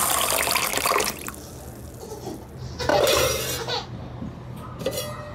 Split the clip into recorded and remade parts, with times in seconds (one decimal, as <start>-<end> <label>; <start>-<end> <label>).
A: 0.0-0.7 recorded; 0.7-1.3 remade; 1.3-2.9 recorded; 2.9-3.4 remade; 3.4-5.3 recorded